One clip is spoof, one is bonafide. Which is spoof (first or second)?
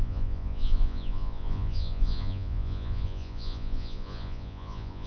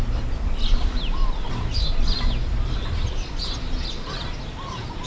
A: first